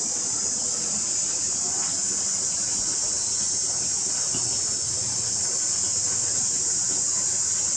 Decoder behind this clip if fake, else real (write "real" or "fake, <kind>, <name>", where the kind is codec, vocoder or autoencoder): real